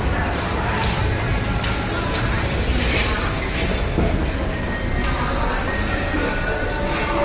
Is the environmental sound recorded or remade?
recorded